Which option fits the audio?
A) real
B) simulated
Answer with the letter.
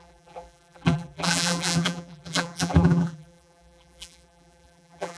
B